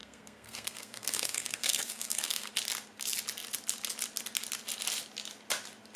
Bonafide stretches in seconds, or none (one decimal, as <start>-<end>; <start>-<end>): 2.5-6.0

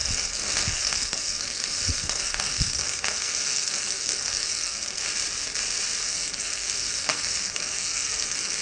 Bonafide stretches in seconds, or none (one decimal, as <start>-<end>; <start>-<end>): 5.0-6.0

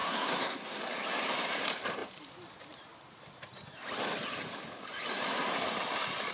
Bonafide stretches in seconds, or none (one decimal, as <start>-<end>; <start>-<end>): 0.8-6.3

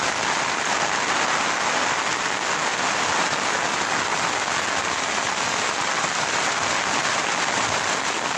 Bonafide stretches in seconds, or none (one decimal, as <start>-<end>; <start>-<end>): 0.0-8.4